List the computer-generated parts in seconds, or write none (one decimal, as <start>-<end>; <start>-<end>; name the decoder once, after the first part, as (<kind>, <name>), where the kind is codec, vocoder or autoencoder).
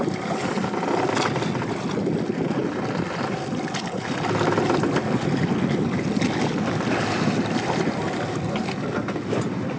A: none